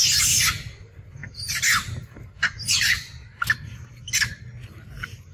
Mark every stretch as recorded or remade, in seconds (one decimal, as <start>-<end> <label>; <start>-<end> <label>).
0.0-5.3 recorded